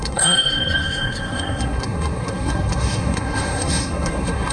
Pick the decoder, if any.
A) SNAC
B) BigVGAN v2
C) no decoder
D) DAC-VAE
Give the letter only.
A